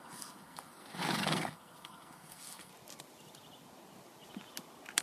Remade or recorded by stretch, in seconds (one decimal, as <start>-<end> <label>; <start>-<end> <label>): 0.0-2.7 remade; 2.7-5.0 recorded